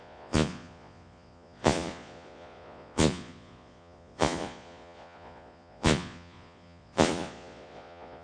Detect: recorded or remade remade